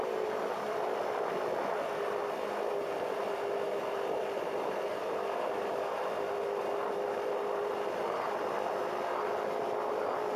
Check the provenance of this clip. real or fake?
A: real